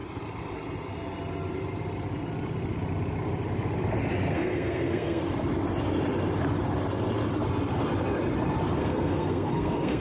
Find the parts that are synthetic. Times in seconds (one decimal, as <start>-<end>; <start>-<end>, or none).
4.3-5.2; 8.8-10.0